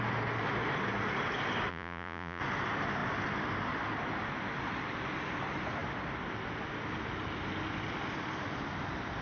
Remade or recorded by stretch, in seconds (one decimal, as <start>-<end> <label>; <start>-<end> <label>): 0.0-1.7 recorded; 1.7-2.4 remade; 2.4-9.2 recorded